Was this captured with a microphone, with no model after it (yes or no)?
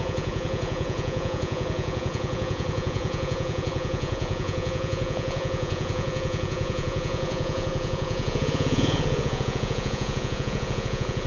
no